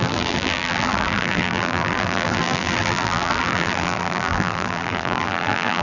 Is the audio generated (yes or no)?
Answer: yes